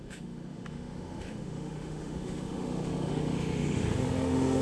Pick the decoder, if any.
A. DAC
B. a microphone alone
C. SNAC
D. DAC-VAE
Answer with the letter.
D